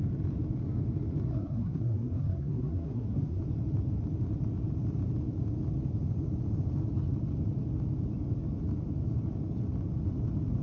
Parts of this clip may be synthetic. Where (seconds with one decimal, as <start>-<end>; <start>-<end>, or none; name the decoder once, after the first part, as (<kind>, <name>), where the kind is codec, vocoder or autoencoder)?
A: 1.3-3.4 (codec, SNAC)